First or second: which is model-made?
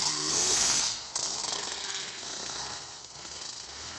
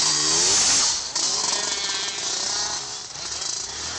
first